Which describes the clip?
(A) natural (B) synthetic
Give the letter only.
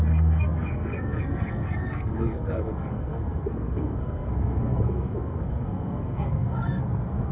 B